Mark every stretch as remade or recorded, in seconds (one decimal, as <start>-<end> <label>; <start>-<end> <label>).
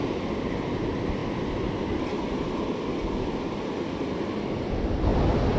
0.0-5.6 recorded